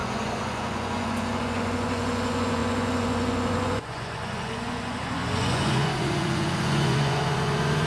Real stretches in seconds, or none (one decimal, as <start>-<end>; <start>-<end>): none